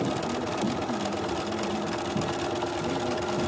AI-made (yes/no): no